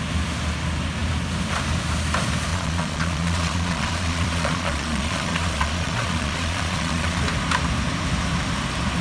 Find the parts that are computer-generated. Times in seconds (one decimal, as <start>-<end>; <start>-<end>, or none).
2.5-7.2

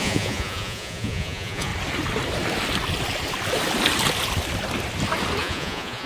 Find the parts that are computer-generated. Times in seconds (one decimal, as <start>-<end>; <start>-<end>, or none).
0.0-1.7; 5.4-6.1